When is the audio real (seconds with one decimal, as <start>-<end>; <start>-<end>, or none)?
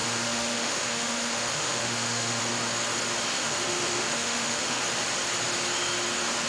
2.4-3.3; 4.8-6.5